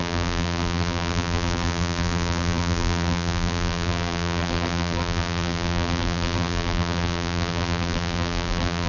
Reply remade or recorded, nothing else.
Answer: remade